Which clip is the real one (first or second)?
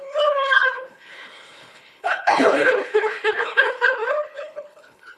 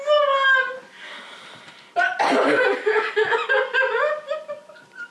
second